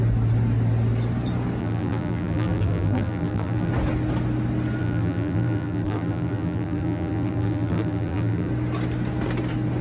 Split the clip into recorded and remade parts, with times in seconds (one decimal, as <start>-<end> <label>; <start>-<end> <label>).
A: 0.0-1.6 recorded; 1.6-3.7 remade; 3.7-4.8 recorded; 4.8-8.5 remade; 8.5-9.8 recorded

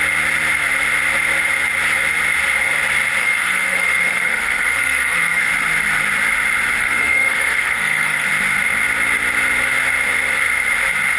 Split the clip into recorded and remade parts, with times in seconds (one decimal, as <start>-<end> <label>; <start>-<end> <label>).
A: 0.0-3.2 recorded; 3.2-5.5 remade; 5.5-6.8 recorded; 6.8-8.3 remade; 8.3-11.2 recorded

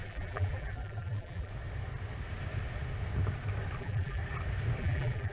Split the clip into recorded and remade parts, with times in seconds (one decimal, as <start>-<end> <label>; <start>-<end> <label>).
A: 0.0-1.5 remade; 1.5-3.8 recorded; 3.8-4.2 remade; 4.2-4.8 recorded; 4.8-5.3 remade

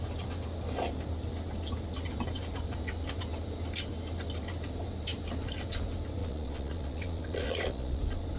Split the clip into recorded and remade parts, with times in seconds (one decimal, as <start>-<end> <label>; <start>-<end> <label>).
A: 0.0-6.2 recorded; 6.2-8.0 remade; 8.0-8.4 recorded

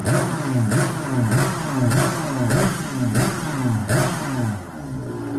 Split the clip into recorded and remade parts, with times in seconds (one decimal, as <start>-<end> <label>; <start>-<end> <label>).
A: 0.0-5.4 recorded